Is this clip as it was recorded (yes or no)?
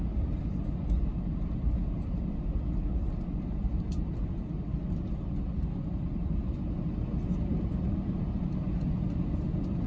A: yes